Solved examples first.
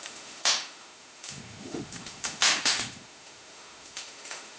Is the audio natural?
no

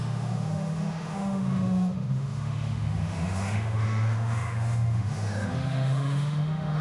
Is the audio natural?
no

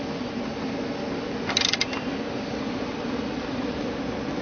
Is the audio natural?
yes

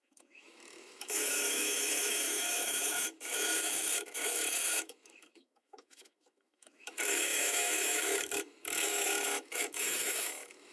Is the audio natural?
no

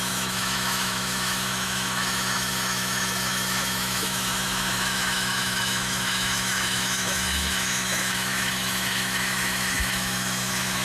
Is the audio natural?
no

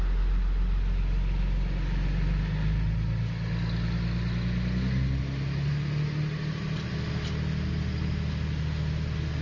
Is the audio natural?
yes